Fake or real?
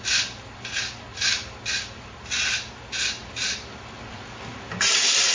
real